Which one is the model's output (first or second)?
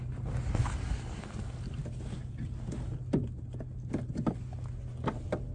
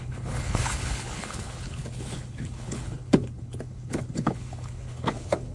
second